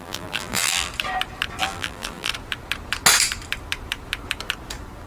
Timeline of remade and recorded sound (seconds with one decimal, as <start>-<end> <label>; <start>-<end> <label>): 0.0-0.9 remade; 0.9-1.6 recorded; 1.6-2.3 remade; 2.3-5.1 recorded